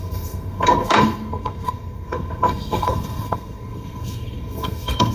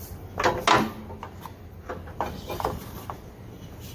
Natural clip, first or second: second